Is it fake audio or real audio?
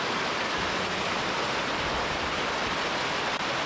real